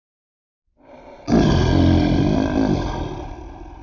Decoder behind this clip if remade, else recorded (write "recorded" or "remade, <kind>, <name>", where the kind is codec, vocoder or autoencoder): recorded